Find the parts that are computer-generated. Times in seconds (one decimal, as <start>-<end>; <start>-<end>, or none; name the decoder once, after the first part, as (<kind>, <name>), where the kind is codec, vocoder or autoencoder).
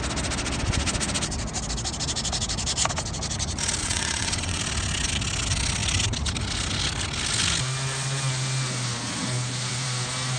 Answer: 3.8-4.6 (vocoder, WaveNeXt)